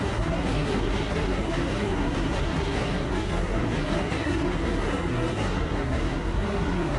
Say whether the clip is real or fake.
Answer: fake